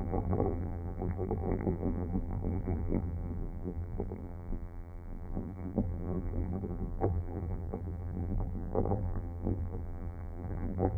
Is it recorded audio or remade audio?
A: remade